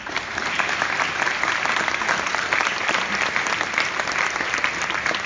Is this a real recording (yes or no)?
yes